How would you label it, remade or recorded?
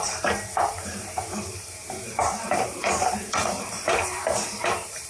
remade